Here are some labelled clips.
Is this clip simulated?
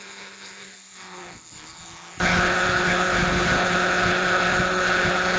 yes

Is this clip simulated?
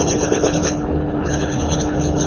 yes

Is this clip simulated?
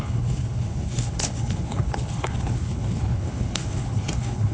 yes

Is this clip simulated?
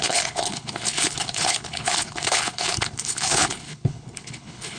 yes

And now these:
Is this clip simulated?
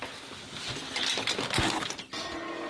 no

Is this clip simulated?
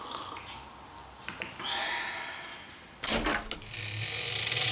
no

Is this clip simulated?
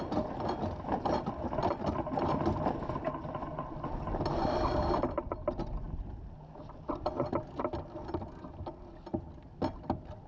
no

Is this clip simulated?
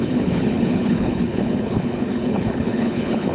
yes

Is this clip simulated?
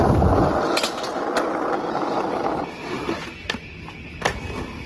no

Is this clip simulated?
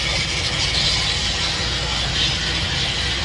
no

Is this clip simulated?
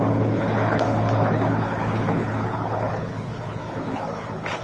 yes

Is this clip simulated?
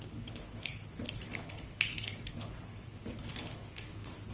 yes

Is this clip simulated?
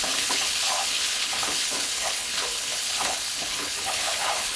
yes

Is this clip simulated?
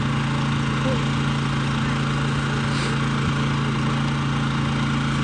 no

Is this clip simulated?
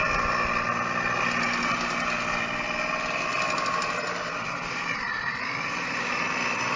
no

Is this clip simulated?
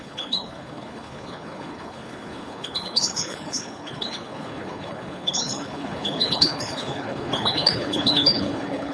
yes